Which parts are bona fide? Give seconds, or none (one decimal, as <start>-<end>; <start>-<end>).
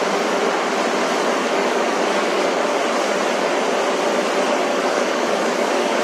0.0-1.4; 2.8-4.7